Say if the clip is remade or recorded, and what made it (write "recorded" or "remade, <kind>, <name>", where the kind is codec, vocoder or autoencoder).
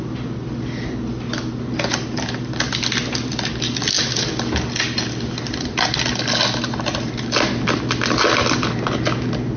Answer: recorded